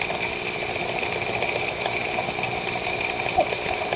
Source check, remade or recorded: recorded